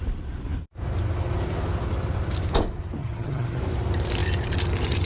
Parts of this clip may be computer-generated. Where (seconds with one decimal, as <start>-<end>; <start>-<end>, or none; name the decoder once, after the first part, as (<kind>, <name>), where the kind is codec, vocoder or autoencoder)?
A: 3.0-3.6 (vocoder, HiFi-GAN)